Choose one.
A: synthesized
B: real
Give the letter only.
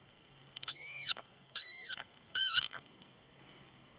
A